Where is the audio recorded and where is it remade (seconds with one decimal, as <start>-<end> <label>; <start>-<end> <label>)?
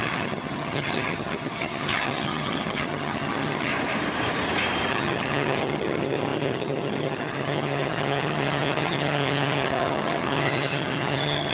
0.0-3.7 remade; 3.7-4.9 recorded; 4.9-11.5 remade